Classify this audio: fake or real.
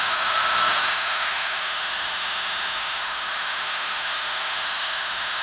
fake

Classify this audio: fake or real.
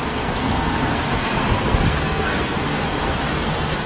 fake